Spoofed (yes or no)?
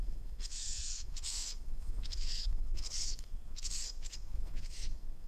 yes